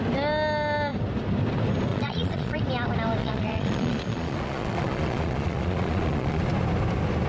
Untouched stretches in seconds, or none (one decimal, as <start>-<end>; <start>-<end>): 0.0-1.9; 2.6-3.2; 6.4-7.3